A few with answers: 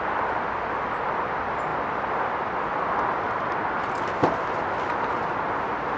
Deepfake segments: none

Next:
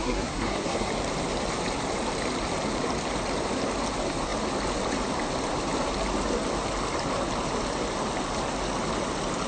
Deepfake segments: 0.0-0.9 (codec, SNAC)

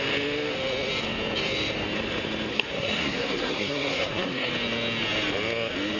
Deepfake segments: 2.5-4.5 (codec, SNAC)

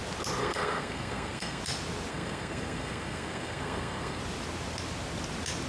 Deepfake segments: 0.4-1.6 (codec, SNAC); 2.1-4.2

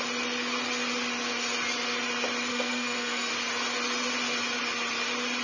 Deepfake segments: 2.5-3.3 (codec, SNAC)

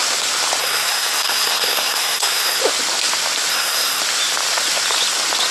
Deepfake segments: 0.6-2.6 (codec, SNAC); 3.5-4.0